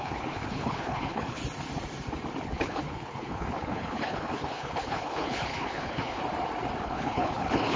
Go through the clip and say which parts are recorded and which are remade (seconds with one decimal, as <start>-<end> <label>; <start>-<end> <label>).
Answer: 0.0-1.4 remade; 1.4-2.4 recorded; 2.4-6.2 remade; 6.2-6.8 recorded; 6.8-7.8 remade